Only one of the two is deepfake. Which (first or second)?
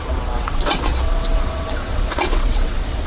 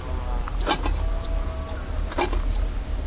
first